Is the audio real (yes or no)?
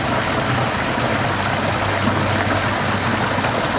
yes